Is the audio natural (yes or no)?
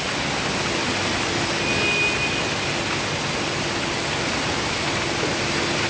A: yes